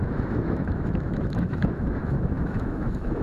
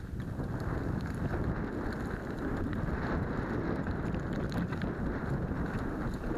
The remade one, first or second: first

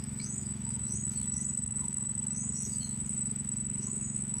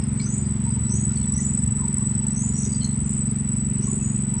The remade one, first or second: first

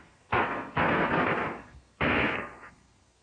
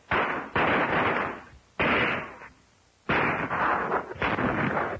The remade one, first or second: first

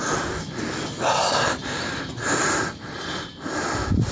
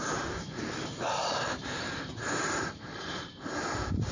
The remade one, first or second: second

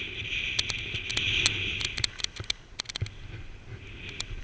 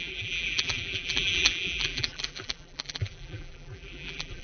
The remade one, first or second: second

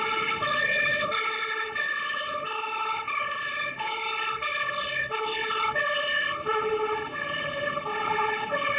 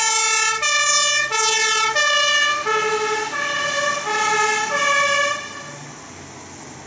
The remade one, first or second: first